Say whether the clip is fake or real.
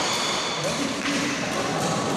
fake